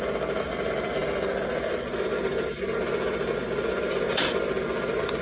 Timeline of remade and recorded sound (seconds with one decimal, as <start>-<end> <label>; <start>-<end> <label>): 0.0-5.2 recorded